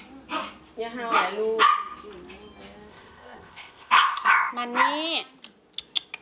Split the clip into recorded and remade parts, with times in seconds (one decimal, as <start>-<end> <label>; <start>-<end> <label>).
0.0-2.9 recorded; 2.9-4.5 remade; 4.5-6.2 recorded